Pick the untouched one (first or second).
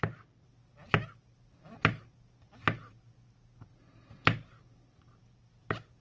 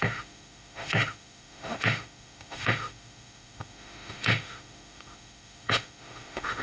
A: first